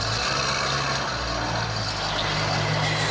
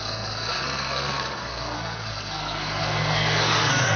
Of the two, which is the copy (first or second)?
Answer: second